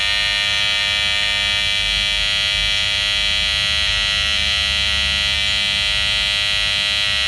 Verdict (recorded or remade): recorded